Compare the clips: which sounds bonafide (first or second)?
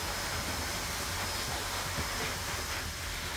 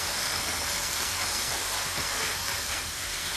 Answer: first